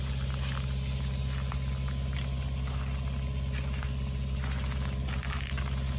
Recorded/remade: recorded